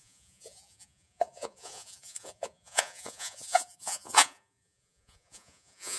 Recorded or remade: remade